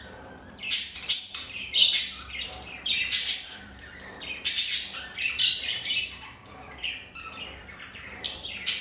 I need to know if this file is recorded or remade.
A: remade